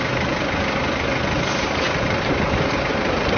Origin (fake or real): real